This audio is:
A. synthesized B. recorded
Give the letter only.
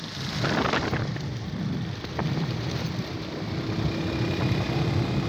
B